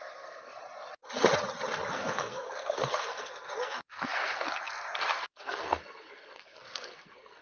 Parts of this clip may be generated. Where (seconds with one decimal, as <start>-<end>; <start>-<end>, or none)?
0.0-0.6; 1.9-7.4